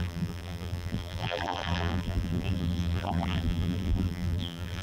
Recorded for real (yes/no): no